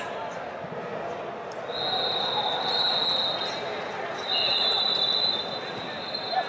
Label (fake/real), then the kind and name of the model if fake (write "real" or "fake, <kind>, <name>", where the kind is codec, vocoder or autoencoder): real